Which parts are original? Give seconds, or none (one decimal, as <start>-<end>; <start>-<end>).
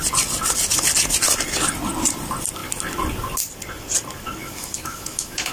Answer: 0.0-4.4